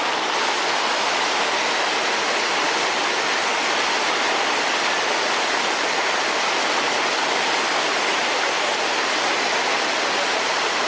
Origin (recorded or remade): recorded